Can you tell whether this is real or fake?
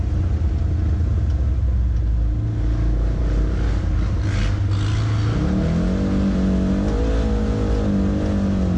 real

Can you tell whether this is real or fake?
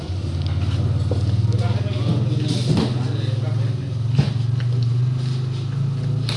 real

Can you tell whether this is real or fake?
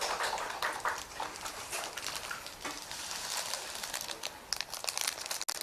real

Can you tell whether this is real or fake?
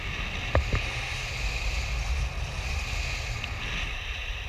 real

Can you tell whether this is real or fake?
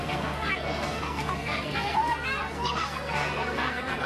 fake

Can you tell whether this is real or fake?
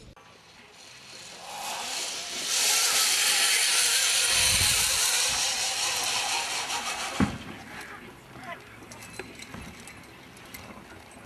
real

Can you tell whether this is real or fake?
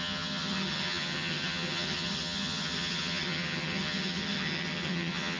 fake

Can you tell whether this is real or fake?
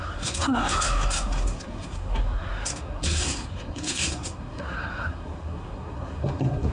fake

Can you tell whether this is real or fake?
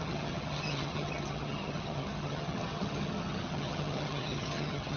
fake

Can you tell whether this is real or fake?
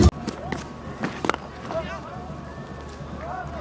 real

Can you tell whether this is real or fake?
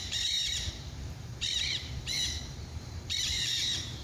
fake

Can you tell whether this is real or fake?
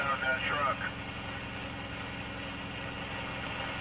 real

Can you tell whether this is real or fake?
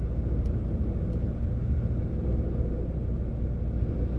real